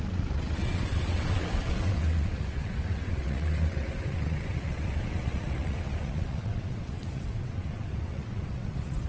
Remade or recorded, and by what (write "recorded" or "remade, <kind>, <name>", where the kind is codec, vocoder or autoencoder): remade, vocoder, WaveNeXt